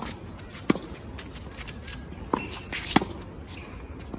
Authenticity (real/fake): real